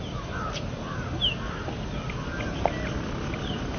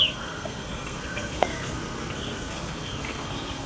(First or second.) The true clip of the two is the first